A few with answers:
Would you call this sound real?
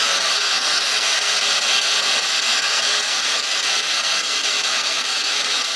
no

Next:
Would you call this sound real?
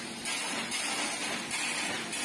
yes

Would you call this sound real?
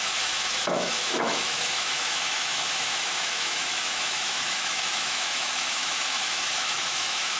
no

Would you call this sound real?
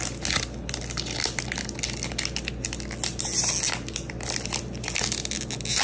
yes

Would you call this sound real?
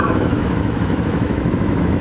no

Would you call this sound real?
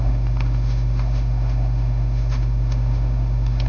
no